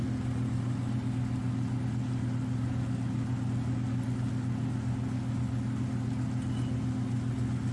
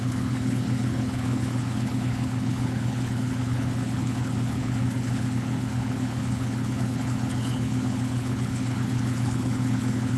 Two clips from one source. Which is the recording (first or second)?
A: first